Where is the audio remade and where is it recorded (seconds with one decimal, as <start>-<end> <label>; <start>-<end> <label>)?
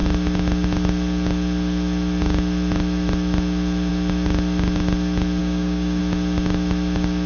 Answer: 0.0-5.4 recorded; 5.4-6.0 remade; 6.0-7.3 recorded